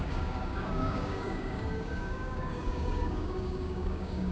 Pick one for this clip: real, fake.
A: fake